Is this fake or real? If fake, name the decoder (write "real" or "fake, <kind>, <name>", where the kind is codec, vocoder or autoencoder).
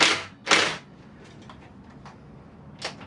real